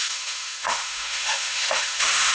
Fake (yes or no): yes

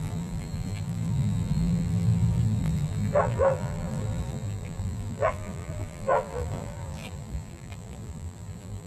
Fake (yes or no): yes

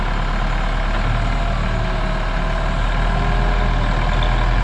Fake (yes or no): no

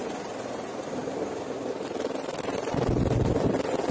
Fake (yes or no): no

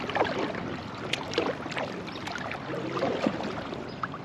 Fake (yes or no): yes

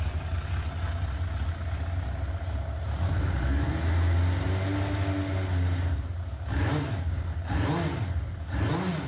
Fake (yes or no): no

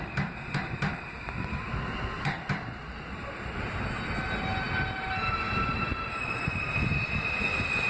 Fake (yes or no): no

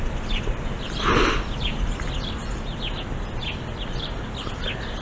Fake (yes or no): no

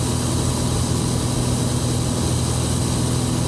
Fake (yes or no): no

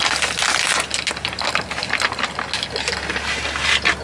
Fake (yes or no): no